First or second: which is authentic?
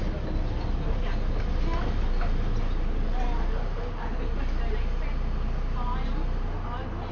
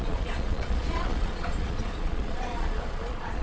first